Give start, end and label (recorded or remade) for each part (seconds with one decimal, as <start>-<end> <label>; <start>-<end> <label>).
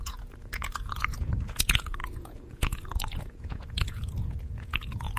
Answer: 0.0-5.2 remade